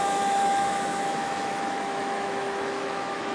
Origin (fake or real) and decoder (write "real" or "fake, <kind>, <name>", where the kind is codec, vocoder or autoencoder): fake, autoencoder, DAC-VAE